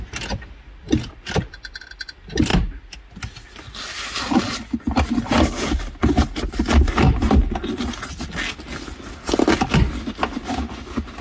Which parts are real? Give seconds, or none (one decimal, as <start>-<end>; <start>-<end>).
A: 0.0-11.2

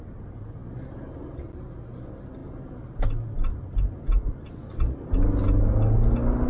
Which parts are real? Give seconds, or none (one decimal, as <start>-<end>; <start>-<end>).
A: 0.0-6.5

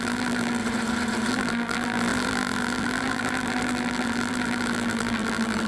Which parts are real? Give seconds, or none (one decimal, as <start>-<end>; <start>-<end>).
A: 0.6-1.3

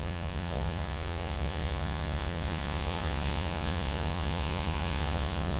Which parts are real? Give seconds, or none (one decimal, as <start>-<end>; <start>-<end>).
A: none

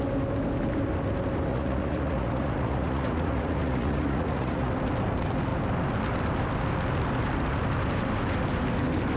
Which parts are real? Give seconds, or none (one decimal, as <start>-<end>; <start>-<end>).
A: 0.0-1.5; 4.7-9.2

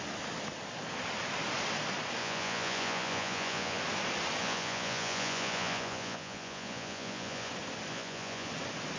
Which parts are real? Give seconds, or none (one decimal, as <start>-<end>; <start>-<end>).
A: 0.0-2.2; 3.8-4.4; 7.5-7.9; 8.5-9.0

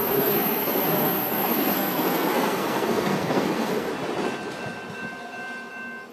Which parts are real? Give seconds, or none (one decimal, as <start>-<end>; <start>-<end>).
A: 3.9-6.1

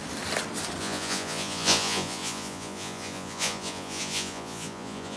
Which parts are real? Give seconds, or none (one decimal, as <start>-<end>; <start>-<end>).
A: 0.0-0.8